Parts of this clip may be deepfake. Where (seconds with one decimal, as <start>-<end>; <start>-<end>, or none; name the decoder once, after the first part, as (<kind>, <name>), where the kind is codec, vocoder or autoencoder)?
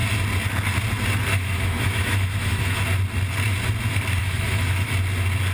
1.3-2.8 (autoencoder, DAC-VAE); 4.2-4.9